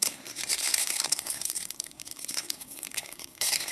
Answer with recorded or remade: remade